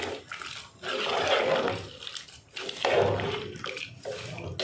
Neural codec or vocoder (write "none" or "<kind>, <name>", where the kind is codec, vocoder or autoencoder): none